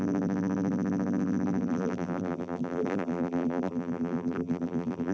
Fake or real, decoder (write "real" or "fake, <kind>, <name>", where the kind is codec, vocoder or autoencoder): fake, vocoder, BigVGAN v2